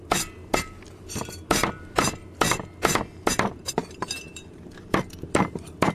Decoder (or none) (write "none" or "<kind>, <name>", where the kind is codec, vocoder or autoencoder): vocoder, BigVGAN v2